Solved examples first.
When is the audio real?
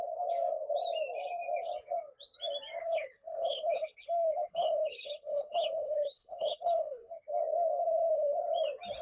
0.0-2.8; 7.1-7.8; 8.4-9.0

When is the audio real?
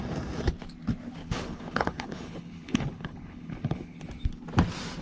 0.0-1.2; 4.0-5.0